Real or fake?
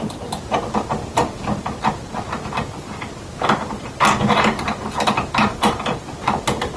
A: real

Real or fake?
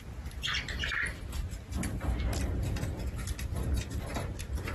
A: real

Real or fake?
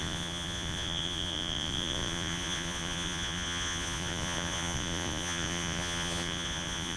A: fake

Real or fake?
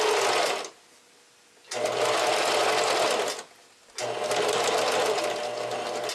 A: real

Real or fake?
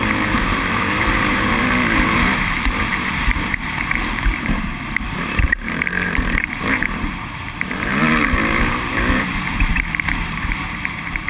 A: fake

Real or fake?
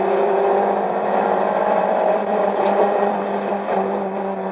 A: fake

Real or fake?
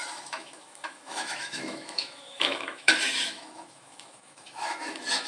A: fake